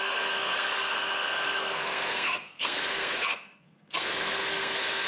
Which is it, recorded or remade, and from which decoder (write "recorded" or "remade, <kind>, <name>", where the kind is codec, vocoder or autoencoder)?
remade, codec, SNAC